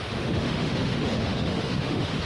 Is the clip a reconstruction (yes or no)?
yes